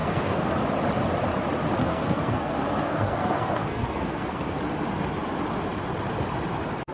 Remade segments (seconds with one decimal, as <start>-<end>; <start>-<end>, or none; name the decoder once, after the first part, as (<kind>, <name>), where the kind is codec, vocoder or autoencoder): 0.0-0.5 (codec, SNAC); 1.8-4.6